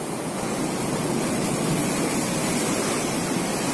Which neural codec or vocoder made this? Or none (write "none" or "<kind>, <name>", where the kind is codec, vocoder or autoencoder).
none